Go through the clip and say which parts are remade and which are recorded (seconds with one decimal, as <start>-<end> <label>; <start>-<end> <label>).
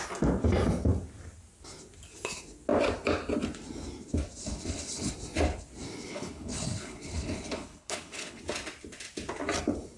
0.0-4.4 recorded; 4.4-5.1 remade; 5.1-6.1 recorded; 6.1-8.4 remade; 8.4-10.0 recorded